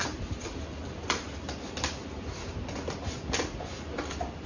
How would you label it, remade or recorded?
recorded